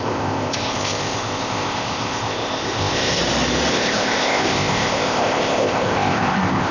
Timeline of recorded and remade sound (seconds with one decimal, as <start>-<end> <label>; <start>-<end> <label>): 0.0-3.2 remade; 3.2-3.7 recorded; 3.7-6.7 remade